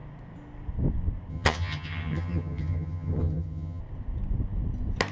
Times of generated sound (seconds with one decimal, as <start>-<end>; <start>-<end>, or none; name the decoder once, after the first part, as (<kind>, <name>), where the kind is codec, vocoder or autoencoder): 1.3-3.8 (vocoder, HiFi-GAN)